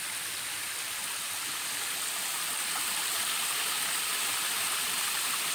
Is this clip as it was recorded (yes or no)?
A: yes